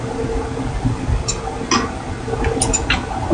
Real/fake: real